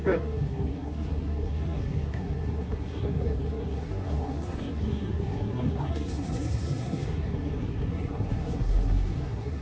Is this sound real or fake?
fake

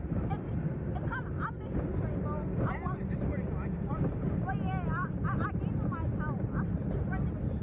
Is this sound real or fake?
real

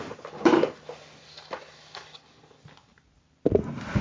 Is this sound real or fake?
real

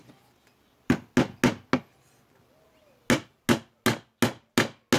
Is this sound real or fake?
real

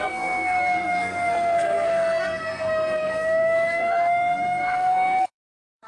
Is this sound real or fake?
fake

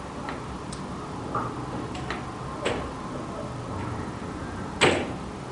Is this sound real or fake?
real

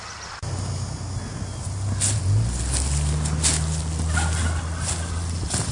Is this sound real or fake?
real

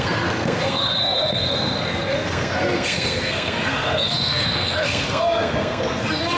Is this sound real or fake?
fake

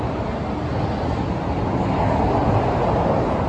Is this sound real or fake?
real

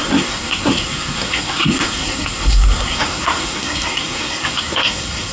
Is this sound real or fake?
fake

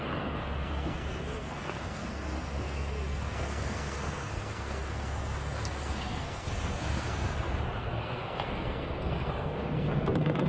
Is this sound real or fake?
fake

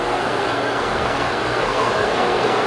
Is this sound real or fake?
fake